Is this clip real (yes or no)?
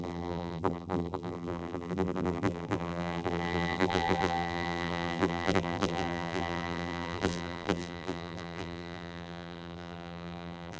no